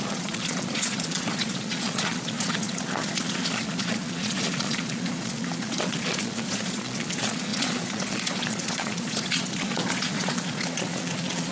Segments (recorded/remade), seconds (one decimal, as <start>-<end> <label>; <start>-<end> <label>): 0.0-11.5 remade